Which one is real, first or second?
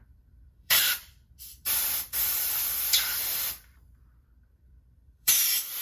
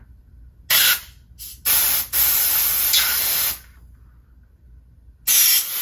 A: second